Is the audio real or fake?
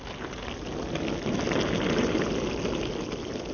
real